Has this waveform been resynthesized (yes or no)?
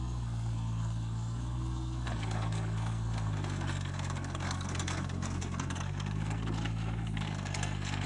yes